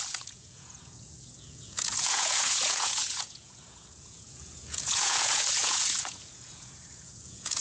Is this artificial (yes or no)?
yes